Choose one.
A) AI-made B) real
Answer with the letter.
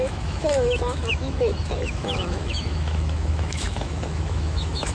A